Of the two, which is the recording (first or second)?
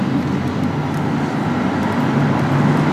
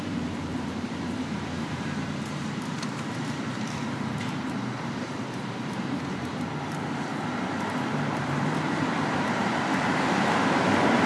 first